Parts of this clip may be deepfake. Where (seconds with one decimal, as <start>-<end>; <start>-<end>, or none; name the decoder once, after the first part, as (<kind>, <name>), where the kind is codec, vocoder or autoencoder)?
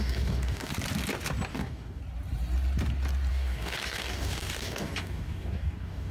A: 0.0-0.7 (codec, DAC); 1.5-2.0; 3.3-6.1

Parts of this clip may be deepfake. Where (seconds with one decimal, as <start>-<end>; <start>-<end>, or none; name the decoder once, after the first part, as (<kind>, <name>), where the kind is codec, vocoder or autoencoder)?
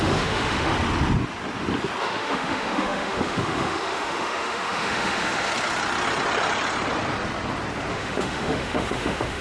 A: 0.0-0.7 (autoencoder, DAC-VAE); 2.0-5.5; 7.9-9.4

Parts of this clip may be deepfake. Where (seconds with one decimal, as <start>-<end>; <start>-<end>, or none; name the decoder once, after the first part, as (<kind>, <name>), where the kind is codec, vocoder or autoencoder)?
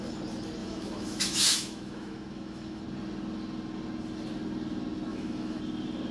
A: 0.6-2.8 (autoencoder, DAC-VAE); 5.1-5.6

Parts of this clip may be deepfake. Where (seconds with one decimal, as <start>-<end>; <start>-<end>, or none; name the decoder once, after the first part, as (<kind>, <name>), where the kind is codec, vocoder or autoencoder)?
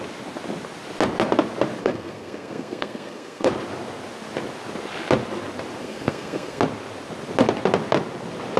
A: 1.8-3.5 (codec, SNAC); 5.8-6.6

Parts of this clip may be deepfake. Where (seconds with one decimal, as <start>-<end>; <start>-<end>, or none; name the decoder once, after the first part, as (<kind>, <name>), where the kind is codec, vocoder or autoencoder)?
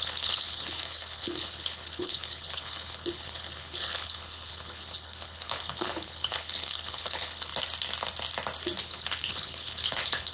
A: 0.0-7.5 (codec, HILCodec); 8.8-10.3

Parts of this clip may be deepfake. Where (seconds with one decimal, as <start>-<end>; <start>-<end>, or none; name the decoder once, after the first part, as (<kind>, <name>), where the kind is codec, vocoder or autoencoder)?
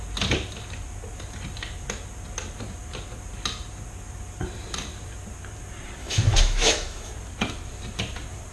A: 6.0-7.1 (autoencoder, DAC-VAE)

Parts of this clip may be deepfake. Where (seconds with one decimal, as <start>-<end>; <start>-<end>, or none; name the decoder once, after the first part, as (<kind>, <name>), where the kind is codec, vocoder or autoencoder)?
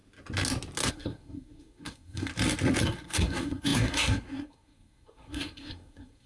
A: 0.9-2.3 (codec, SNAC); 2.8-6.3